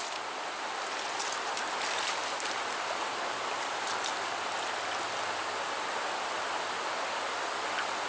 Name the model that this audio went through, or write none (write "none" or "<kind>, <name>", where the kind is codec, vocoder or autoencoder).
none